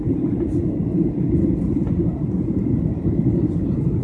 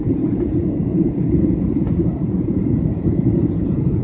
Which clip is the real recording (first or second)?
first